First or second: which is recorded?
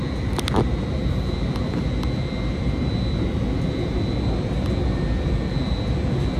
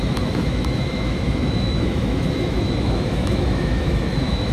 first